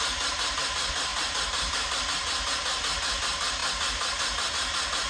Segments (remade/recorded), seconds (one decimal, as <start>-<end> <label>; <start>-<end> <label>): 0.0-5.1 recorded